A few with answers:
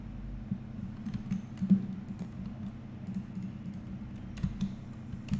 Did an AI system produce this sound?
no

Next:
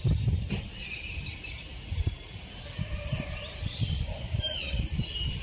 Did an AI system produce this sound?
no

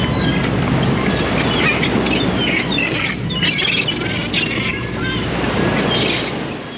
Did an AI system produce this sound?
no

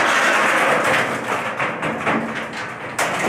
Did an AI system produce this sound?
no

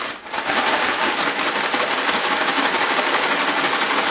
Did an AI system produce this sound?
no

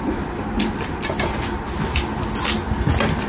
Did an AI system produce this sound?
no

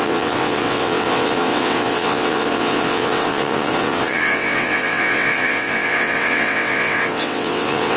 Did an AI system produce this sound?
yes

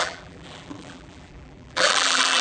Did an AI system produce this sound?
yes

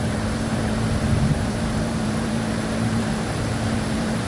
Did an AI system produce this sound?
yes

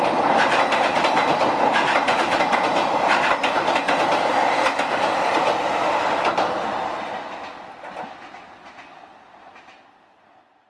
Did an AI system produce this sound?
no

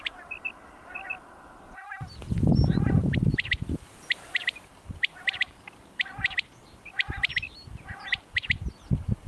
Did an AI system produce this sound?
no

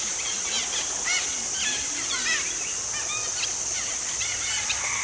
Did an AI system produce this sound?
no